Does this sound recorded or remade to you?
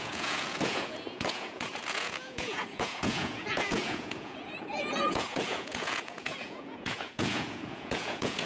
remade